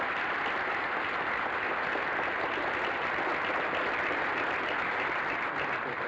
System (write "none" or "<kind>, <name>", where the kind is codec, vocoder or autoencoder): none